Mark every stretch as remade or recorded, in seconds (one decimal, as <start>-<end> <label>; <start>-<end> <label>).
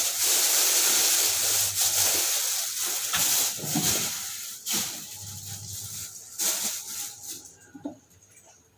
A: 0.0-8.8 recorded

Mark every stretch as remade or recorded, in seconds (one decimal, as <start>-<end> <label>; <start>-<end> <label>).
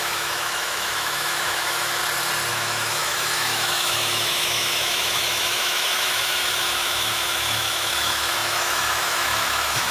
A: 0.0-2.0 remade; 2.0-2.5 recorded; 2.5-9.9 remade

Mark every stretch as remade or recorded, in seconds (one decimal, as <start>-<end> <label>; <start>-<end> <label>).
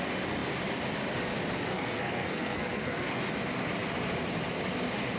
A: 0.0-1.7 recorded; 1.7-3.2 remade; 3.2-5.2 recorded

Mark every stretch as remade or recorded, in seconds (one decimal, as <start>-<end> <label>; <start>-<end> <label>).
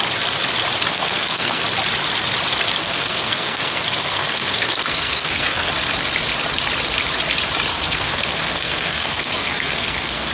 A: 0.0-0.9 recorded; 0.9-1.6 remade; 1.6-2.8 recorded; 2.8-5.7 remade; 5.7-7.7 recorded; 7.7-10.3 remade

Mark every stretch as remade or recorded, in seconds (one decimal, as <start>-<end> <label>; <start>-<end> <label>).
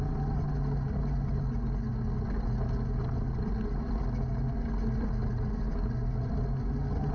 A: 0.0-7.1 recorded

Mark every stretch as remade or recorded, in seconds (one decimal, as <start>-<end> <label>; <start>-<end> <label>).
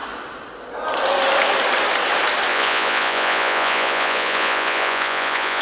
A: 0.0-2.5 recorded; 2.5-5.6 remade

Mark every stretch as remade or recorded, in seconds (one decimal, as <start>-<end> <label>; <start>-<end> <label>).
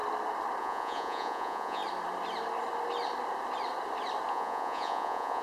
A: 0.0-0.6 recorded; 0.6-1.8 remade; 1.8-4.3 recorded; 4.3-5.4 remade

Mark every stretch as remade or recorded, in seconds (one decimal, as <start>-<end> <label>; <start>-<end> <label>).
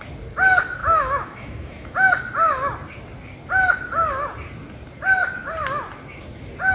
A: 0.0-0.8 recorded; 0.8-2.1 remade; 2.1-6.7 recorded